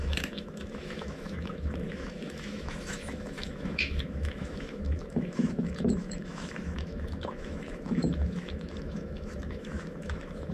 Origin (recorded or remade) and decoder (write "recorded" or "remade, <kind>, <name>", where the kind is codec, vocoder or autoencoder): remade, autoencoder, DAC-VAE